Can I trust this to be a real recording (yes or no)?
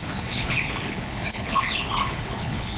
no